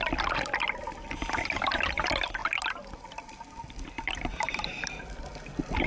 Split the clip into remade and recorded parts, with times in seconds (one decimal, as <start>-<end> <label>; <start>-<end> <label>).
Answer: 0.0-5.9 recorded